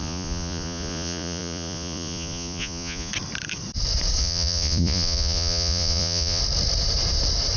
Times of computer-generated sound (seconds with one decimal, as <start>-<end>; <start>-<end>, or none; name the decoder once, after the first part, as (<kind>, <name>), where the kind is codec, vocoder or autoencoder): 0.0-3.1 (vocoder, Vocos); 4.2-6.4